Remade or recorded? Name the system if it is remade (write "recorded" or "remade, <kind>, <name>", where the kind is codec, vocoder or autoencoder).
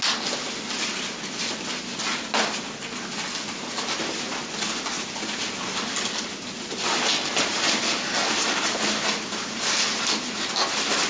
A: recorded